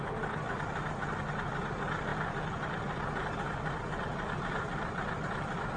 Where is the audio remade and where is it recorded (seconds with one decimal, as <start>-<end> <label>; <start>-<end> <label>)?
0.0-5.8 recorded